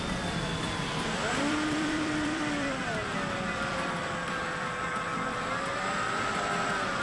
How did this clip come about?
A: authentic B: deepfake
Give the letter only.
B